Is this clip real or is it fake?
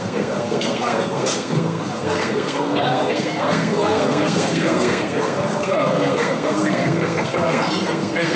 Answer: fake